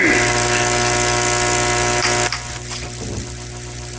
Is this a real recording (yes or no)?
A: yes